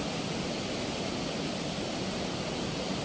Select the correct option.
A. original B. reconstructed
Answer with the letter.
A